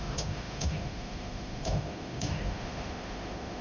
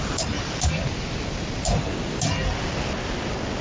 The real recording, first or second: second